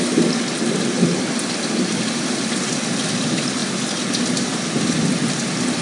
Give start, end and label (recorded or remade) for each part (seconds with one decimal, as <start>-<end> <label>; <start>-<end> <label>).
0.0-5.8 recorded